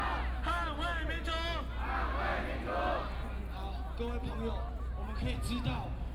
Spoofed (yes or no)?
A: no